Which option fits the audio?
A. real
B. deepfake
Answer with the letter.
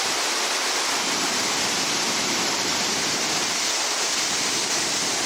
B